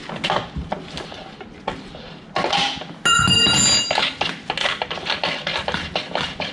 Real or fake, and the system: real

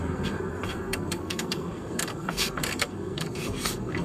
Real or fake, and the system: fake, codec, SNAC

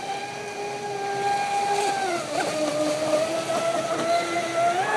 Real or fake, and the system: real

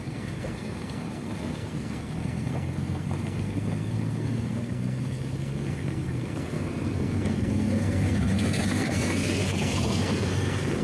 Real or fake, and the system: fake, codec, SNAC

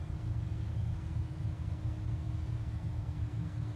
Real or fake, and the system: fake, codec, SNAC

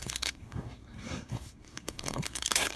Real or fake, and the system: fake, codec, SNAC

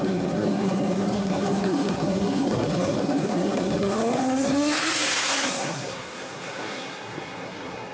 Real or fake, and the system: fake, codec, SNAC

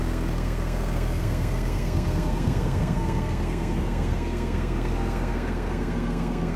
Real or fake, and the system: fake, codec, SNAC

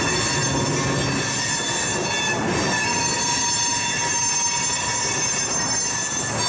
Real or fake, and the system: real